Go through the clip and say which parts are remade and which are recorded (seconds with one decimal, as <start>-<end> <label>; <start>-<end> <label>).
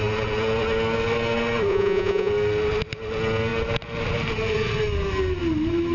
0.0-1.7 recorded; 1.7-2.3 remade; 2.3-5.9 recorded